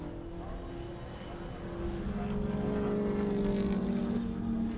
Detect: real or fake real